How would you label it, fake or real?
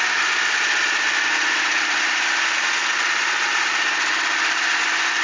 real